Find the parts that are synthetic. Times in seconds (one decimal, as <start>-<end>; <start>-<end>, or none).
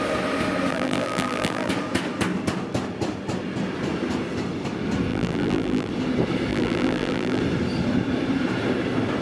0.7-1.7; 5.1-5.9; 6.5-7.4